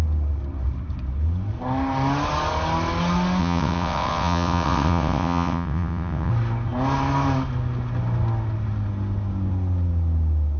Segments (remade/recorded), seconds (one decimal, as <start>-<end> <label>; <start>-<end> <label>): 0.0-3.4 recorded; 3.4-6.3 remade; 6.3-10.6 recorded